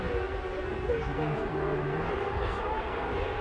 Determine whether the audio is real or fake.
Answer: fake